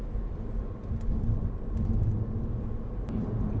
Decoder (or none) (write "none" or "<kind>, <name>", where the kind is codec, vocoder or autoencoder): none